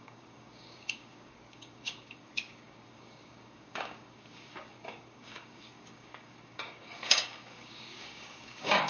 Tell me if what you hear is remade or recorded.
remade